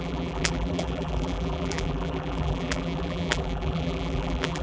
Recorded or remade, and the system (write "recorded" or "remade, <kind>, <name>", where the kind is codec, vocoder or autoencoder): remade, vocoder, BigVGAN v2